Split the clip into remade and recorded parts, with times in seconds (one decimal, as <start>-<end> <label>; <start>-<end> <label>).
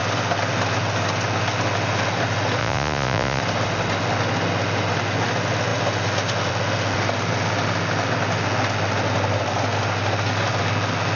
0.0-2.6 recorded; 2.6-3.4 remade; 3.4-11.2 recorded